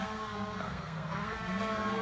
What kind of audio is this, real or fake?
fake